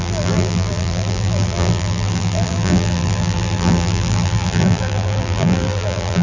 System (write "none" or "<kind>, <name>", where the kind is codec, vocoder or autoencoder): vocoder, BigVGAN v2